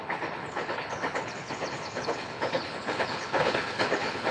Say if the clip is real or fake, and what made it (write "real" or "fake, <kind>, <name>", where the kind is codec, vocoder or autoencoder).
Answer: fake, codec, HILCodec